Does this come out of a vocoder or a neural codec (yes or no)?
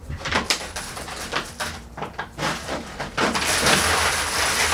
yes